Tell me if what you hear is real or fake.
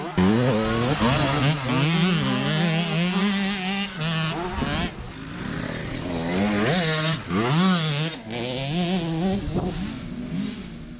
real